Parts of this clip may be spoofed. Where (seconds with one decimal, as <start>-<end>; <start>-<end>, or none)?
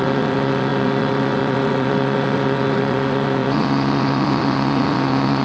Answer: 0.0-5.4